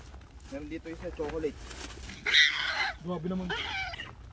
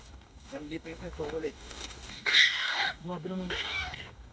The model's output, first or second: second